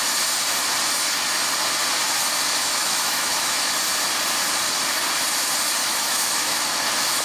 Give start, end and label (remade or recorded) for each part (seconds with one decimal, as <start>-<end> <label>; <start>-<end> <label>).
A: 0.0-2.6 recorded; 2.6-3.7 remade; 3.7-5.8 recorded; 5.8-6.6 remade; 6.6-7.2 recorded